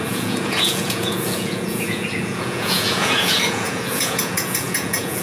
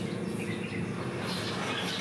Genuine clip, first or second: second